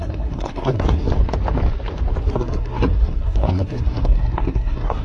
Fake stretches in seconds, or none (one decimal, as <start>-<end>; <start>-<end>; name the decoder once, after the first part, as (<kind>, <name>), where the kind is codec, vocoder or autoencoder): 0.0-1.1 (codec, SNAC); 2.2-5.0